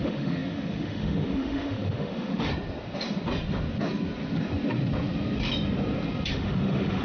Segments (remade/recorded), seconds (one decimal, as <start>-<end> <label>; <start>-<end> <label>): 0.0-2.5 remade; 2.5-6.3 recorded; 6.3-7.0 remade